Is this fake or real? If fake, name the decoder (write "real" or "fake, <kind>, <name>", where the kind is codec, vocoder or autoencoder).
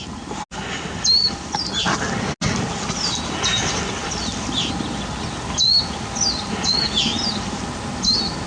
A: real